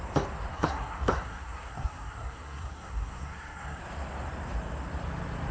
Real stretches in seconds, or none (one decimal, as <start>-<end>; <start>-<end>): 0.0-0.5; 3.8-5.5

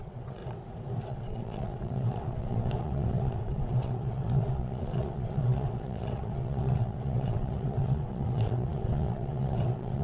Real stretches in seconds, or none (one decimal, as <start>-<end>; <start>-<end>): 0.4-1.0